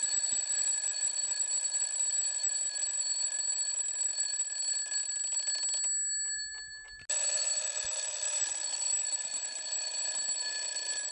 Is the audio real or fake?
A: real